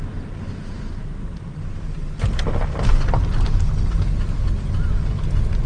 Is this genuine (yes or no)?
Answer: yes